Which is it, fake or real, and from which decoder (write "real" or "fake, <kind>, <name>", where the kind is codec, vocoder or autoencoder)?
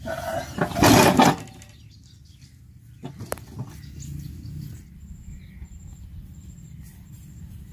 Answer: real